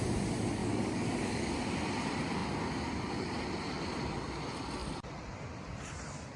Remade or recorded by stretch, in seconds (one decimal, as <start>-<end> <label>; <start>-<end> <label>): 0.0-0.6 recorded; 0.6-1.5 remade; 1.5-6.4 recorded